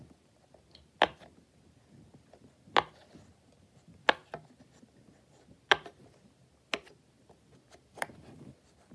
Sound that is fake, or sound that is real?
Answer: real